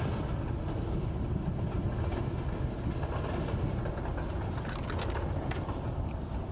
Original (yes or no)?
yes